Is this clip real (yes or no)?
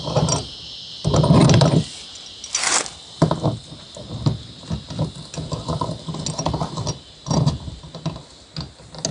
yes